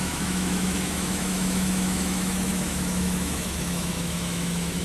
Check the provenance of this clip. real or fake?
fake